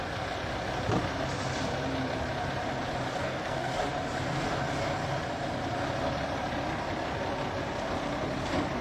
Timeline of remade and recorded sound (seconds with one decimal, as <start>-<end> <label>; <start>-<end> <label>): 0.0-3.2 recorded; 3.2-3.7 remade; 3.7-8.8 recorded